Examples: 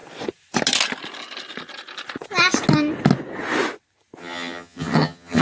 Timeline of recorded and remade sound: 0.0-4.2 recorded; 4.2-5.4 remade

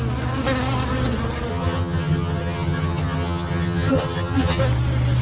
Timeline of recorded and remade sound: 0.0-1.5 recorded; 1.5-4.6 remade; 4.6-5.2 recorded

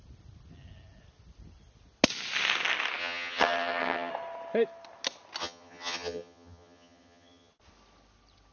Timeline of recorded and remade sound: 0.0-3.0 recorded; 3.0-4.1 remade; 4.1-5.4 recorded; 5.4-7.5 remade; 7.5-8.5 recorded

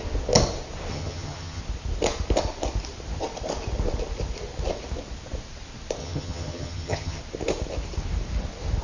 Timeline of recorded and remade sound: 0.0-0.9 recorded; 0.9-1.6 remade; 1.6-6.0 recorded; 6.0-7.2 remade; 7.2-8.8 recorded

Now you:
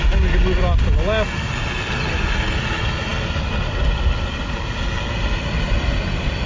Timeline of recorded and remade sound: 0.0-6.5 recorded

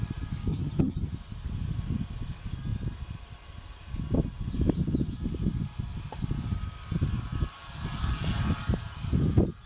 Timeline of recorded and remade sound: 0.0-0.5 recorded; 0.5-1.1 remade; 1.1-9.7 recorded

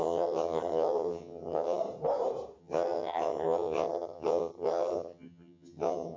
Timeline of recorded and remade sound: 0.0-1.8 remade; 1.8-2.6 recorded; 2.6-6.2 remade

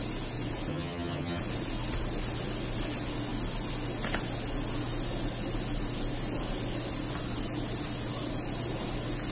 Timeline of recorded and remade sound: 0.0-0.7 recorded; 0.7-1.4 remade; 1.4-9.3 recorded